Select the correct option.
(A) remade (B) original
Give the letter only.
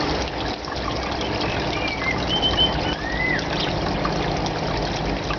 B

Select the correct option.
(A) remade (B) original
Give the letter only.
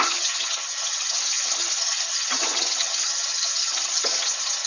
A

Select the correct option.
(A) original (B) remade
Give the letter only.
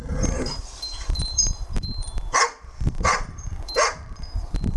B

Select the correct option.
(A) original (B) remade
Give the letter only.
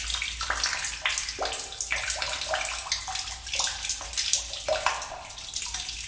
A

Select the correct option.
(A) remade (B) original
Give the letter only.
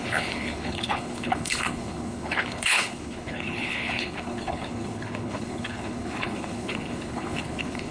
A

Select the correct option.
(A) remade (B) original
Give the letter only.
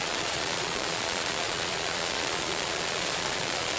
A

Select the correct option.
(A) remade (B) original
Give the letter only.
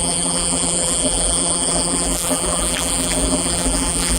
A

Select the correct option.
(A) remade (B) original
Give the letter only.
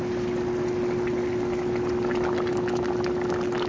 B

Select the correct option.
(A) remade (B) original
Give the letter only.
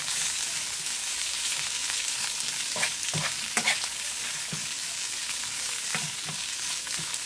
A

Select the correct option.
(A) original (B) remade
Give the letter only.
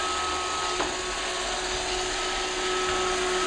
A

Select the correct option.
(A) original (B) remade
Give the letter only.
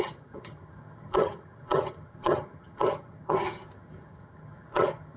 B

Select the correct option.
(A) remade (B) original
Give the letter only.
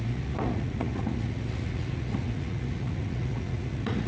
A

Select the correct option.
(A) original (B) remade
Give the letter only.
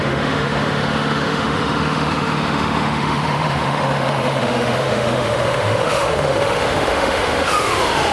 B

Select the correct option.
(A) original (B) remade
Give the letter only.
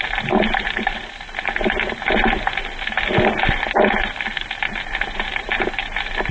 A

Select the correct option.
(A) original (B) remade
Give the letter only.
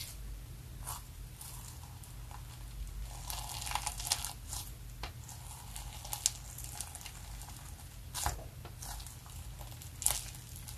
A